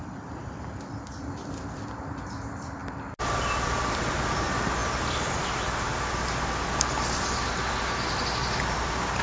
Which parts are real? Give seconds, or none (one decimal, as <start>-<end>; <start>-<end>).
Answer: 0.0-9.2